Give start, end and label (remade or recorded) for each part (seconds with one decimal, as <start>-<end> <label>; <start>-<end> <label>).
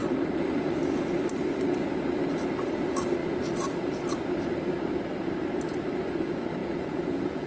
0.0-6.6 recorded; 6.6-7.5 remade